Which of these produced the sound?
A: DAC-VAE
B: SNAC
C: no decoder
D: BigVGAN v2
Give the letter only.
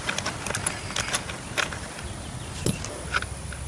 C